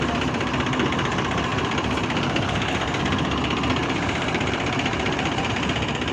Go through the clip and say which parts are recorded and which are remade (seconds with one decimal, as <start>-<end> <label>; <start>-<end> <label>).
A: 0.0-3.8 recorded; 3.8-4.4 remade; 4.4-4.9 recorded; 4.9-5.5 remade; 5.5-6.1 recorded